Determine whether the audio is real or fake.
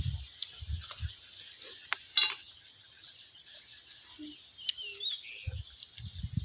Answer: real